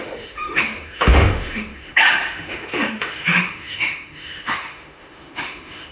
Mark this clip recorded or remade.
remade